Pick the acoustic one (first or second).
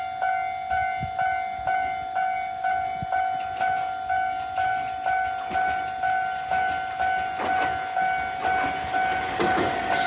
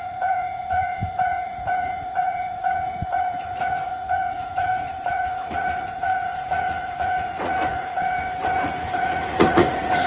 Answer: first